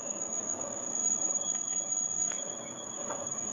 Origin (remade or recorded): remade